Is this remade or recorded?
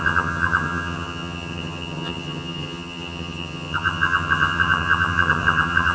remade